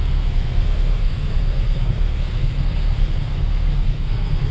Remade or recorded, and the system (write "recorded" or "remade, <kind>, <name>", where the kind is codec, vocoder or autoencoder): remade, codec, SNAC